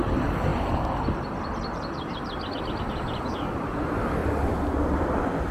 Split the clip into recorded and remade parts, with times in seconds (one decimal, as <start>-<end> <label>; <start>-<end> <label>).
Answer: 0.0-0.5 recorded; 0.5-2.8 remade; 2.8-4.2 recorded; 4.2-5.5 remade